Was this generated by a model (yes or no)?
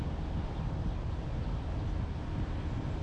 no